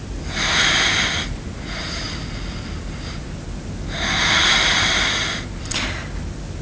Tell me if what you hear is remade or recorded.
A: recorded